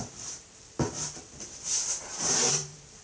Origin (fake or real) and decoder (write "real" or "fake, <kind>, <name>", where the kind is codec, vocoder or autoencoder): fake, vocoder, BigVGAN v2